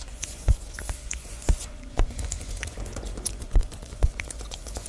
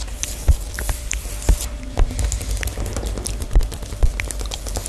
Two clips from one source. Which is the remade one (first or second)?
first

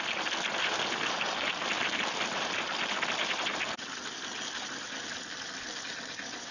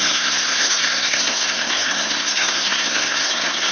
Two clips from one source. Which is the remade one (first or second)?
second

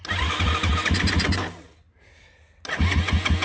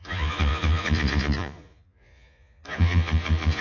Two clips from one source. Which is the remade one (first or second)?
second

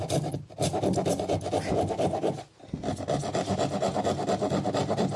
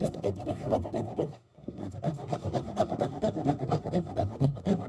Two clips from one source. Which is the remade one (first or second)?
second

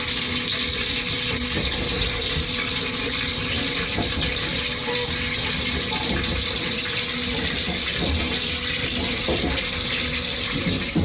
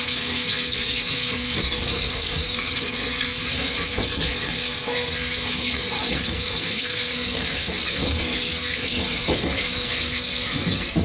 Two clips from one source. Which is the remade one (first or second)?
second